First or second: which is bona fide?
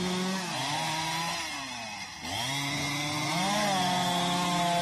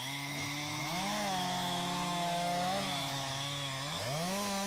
first